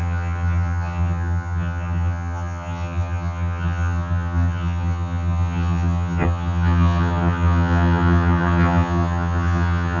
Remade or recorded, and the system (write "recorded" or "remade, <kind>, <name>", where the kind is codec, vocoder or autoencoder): remade, vocoder, HiFi-GAN